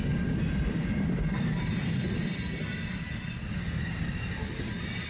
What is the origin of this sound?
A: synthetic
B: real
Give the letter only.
B